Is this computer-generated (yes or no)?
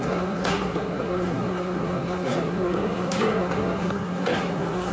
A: yes